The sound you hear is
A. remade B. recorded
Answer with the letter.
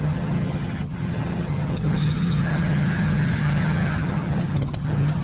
A